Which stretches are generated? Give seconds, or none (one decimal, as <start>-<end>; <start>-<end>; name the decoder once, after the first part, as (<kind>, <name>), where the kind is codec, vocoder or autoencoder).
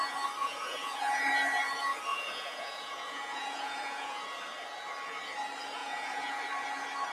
0.4-1.2 (vocoder, Vocos); 2.1-4.2; 5.8-6.4